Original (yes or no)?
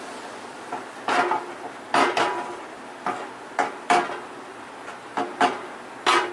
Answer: yes